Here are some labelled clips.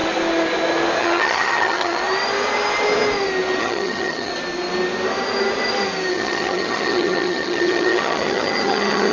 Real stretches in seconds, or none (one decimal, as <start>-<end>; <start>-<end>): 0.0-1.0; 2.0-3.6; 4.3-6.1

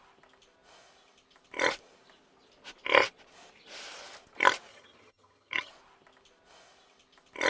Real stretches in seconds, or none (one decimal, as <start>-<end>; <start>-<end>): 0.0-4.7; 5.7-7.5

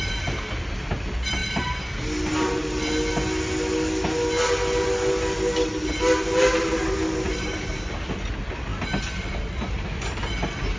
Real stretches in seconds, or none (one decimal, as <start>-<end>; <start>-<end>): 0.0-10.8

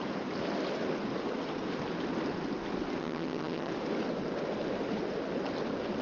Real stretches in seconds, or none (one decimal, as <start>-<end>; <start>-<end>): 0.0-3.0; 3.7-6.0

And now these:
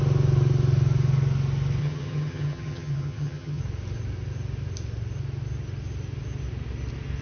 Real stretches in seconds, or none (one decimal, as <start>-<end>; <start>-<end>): 0.0-1.8; 3.6-7.2